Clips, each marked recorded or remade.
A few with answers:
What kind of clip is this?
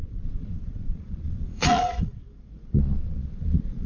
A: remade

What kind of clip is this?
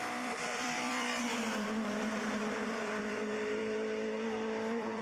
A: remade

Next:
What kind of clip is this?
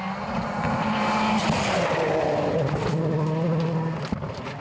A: recorded